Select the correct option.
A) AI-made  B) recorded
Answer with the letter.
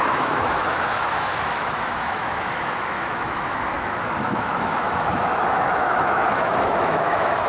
A